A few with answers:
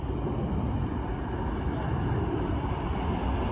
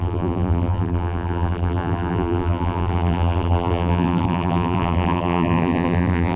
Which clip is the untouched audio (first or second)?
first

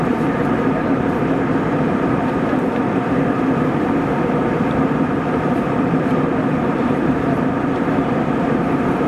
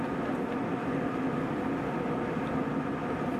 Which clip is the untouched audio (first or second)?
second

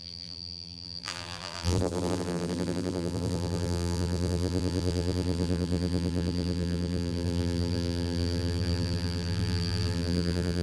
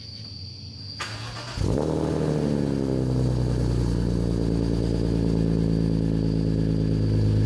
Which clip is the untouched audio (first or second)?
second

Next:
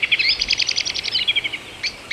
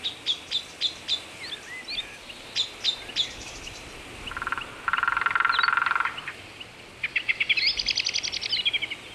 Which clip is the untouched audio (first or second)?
second